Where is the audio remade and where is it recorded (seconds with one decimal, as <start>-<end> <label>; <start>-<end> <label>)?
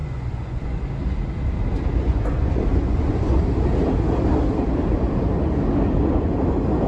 0.0-0.8 remade; 0.8-2.0 recorded; 2.0-3.4 remade; 3.4-6.9 recorded